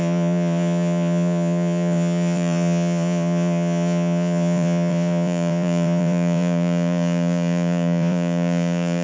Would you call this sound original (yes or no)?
no